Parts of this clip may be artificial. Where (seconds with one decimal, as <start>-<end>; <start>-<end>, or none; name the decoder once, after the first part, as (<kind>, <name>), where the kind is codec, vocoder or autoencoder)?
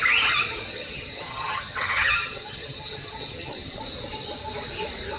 0.7-3.8 (vocoder, HiFi-GAN)